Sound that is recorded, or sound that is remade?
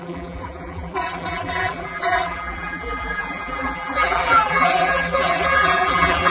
remade